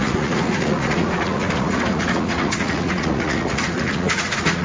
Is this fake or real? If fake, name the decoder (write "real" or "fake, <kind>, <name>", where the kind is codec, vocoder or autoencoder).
fake, vocoder, Vocos